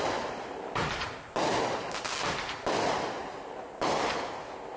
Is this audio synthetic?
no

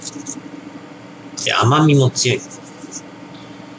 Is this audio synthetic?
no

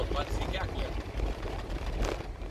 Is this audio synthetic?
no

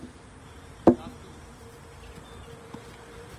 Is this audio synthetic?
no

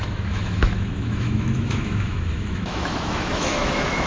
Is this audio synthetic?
yes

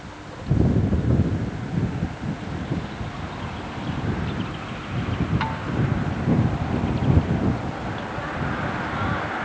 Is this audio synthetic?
no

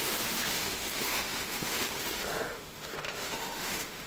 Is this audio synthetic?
yes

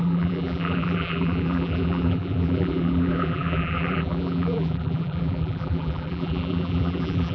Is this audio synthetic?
yes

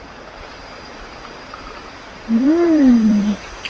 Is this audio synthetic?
yes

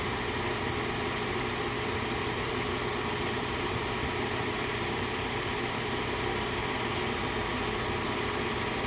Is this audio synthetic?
no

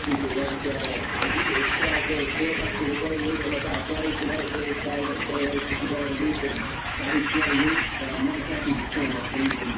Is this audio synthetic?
yes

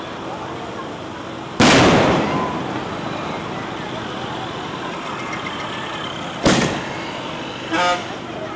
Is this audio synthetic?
no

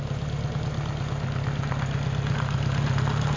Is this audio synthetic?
no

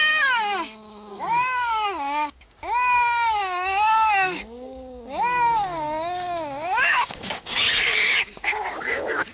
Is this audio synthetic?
yes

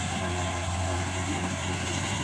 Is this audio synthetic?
yes